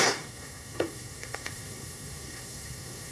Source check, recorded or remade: remade